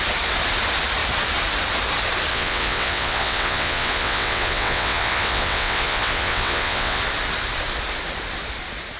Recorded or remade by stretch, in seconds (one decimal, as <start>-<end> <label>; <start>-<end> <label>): 0.0-2.3 recorded; 2.3-7.0 remade; 7.0-9.0 recorded